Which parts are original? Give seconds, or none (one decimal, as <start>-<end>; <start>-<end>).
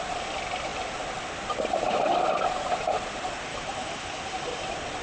0.0-3.5; 4.1-5.0